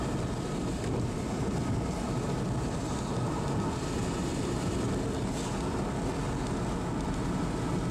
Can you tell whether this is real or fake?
real